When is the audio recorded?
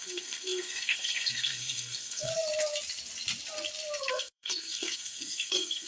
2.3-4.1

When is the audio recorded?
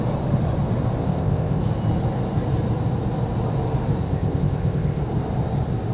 0.0-1.0; 1.6-4.0; 5.0-5.9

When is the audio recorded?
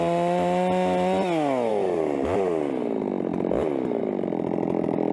0.0-5.1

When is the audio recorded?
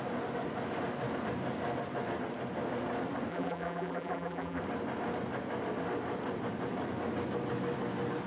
0.0-3.3; 4.6-8.3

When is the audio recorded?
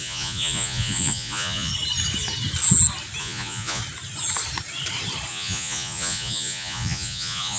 1.7-3.2; 3.8-5.3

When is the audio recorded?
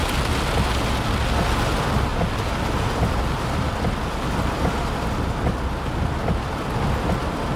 0.0-2.1; 4.3-7.6